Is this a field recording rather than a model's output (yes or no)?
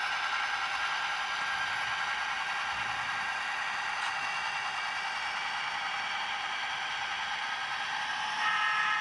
yes